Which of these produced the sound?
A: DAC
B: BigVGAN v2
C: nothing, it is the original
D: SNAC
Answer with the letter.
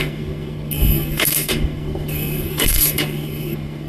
D